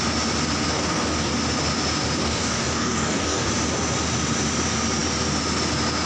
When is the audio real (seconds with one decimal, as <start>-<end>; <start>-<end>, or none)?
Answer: 0.0-0.7; 1.3-2.2; 3.5-6.1